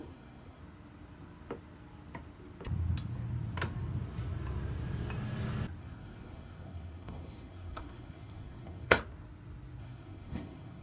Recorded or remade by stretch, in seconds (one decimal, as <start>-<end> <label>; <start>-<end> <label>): 0.0-0.6 remade; 0.6-5.8 recorded; 5.8-9.0 remade; 9.0-9.8 recorded; 9.8-10.8 remade